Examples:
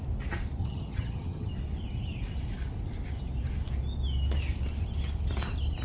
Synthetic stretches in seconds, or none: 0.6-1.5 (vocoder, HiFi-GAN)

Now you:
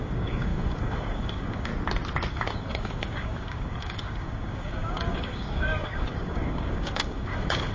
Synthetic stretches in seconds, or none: 0.0-1.7 (codec, DAC); 2.3-7.7

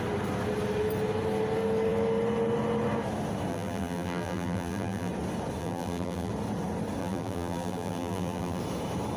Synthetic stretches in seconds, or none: 3.5-5.1 (vocoder, BigVGAN v2); 5.6-6.3; 7.0-8.6

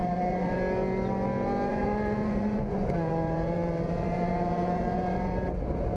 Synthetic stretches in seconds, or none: 0.0-0.6 (vocoder, Vocos); 1.7-5.3

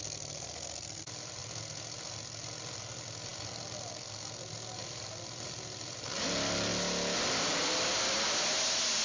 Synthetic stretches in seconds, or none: none

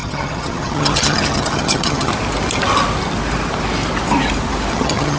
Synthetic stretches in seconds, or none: 0.0-2.1 (vocoder, HiFi-GAN); 4.7-5.2